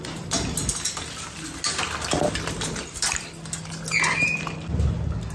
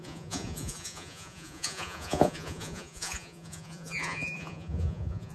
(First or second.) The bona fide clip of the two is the first